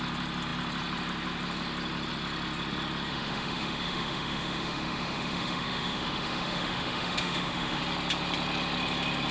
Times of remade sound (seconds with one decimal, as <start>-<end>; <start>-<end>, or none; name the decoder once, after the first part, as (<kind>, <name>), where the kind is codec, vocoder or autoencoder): 3.1-7.8 (autoencoder, DAC-VAE)